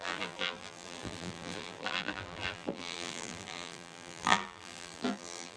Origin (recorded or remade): remade